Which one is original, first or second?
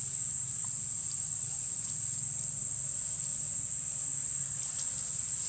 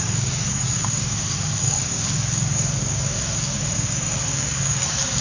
first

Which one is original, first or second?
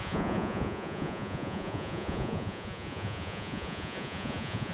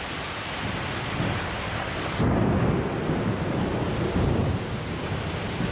second